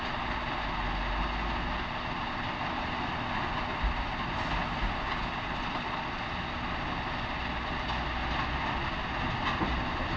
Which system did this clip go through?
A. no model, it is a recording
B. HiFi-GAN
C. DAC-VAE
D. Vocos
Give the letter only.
A